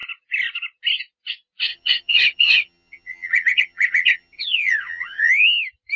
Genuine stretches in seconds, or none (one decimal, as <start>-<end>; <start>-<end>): 0.0-1.7; 5.3-6.0